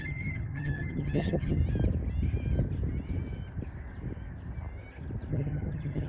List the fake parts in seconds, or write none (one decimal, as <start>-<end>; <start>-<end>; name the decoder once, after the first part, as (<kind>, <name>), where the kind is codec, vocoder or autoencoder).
0.0-1.6 (vocoder, HiFi-GAN); 5.3-6.1